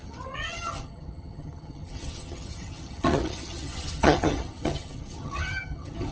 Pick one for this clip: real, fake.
fake